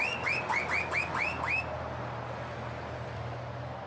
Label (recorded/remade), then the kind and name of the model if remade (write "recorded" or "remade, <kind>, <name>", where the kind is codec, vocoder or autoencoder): recorded